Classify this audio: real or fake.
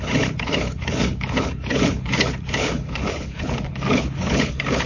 fake